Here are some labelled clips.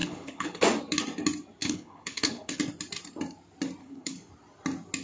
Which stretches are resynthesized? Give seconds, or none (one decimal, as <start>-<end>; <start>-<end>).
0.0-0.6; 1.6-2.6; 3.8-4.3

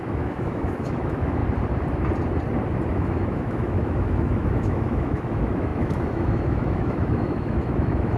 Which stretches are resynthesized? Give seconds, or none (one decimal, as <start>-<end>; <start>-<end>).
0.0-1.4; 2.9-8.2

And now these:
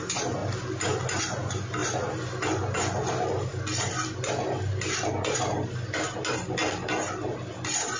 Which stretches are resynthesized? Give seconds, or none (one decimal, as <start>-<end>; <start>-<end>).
none

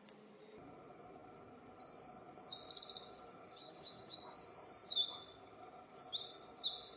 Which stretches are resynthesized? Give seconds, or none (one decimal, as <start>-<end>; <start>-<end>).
3.4-4.3

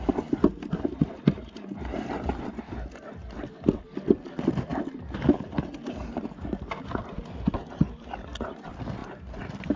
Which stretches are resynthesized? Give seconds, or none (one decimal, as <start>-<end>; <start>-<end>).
none